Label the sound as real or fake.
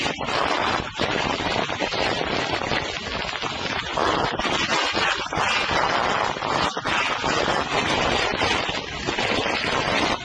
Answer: real